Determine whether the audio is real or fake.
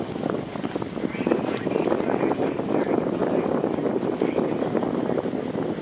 real